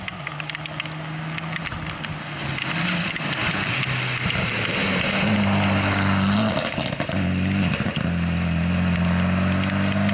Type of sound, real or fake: real